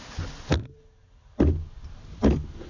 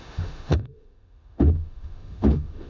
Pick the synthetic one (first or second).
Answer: second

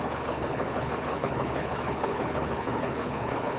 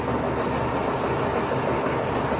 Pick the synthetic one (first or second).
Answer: first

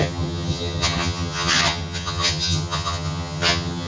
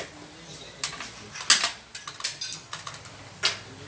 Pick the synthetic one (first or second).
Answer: first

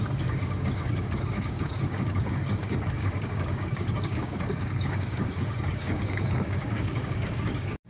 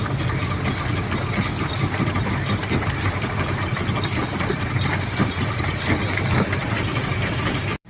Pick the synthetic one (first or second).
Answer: first